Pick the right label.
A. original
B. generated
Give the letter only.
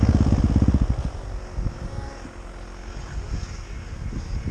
A